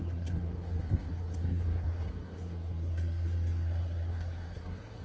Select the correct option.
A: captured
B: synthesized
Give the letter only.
B